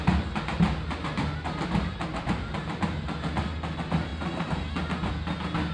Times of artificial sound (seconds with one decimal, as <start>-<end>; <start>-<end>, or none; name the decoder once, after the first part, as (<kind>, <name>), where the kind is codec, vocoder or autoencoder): none